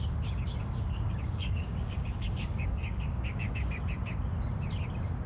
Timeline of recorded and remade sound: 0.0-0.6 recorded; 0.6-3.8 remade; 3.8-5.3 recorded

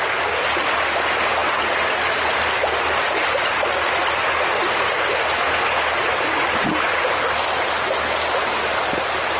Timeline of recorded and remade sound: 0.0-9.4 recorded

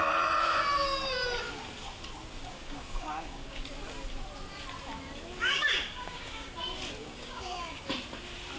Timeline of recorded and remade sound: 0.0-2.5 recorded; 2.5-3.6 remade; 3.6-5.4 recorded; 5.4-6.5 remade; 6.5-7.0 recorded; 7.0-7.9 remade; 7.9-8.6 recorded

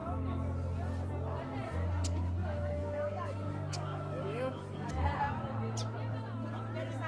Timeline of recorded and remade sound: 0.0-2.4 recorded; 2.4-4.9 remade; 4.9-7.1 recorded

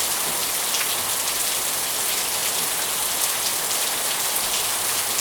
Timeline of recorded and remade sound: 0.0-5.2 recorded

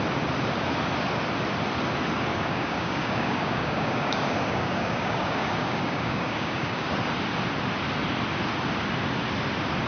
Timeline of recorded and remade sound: 0.0-2.3 recorded; 2.3-6.9 remade; 6.9-9.9 recorded

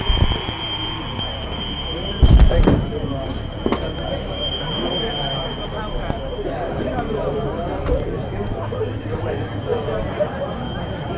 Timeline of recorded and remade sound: 0.0-11.2 recorded

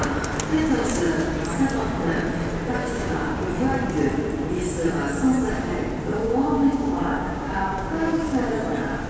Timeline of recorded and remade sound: 0.0-0.5 recorded; 0.5-1.0 remade; 1.0-2.8 recorded; 2.8-3.4 remade; 3.4-6.1 recorded; 6.1-8.6 remade; 8.6-9.1 recorded